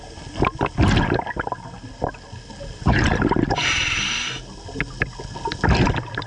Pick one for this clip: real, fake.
real